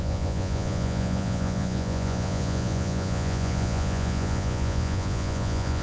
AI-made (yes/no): yes